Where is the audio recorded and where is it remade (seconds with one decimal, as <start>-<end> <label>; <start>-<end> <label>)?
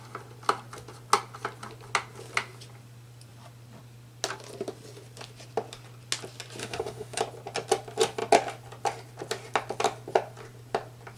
0.0-6.6 recorded; 6.6-7.2 remade; 7.2-11.2 recorded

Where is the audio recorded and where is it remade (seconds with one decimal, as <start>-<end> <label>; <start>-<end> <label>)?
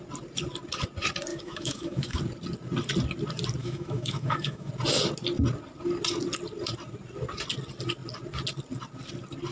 0.0-1.3 recorded; 1.3-2.2 remade; 2.2-3.6 recorded; 3.6-4.7 remade; 4.7-9.5 recorded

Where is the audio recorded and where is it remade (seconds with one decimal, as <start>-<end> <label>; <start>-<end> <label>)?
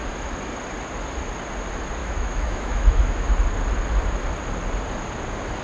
0.0-2.0 recorded; 2.0-3.3 remade; 3.3-5.6 recorded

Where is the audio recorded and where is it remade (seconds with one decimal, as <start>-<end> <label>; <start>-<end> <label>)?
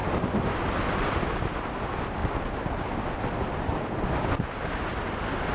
0.0-5.5 recorded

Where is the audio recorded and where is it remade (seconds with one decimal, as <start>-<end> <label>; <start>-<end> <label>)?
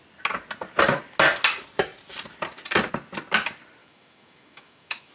0.0-3.8 recorded; 3.8-5.1 remade